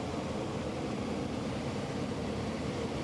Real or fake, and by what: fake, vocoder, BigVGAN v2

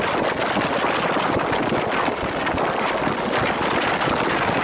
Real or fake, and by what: real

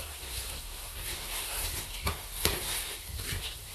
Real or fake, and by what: fake, codec, SNAC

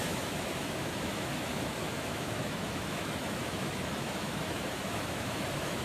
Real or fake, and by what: fake, autoencoder, DAC-VAE